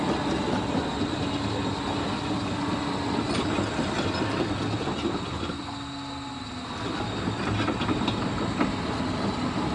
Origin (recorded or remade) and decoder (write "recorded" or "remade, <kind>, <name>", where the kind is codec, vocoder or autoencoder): recorded